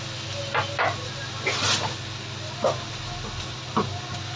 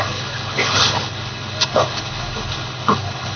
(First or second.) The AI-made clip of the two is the second